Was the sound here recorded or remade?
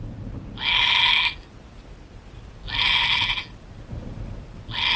recorded